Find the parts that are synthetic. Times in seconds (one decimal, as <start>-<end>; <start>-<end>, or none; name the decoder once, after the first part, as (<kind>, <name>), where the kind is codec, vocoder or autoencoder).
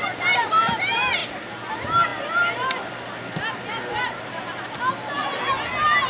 none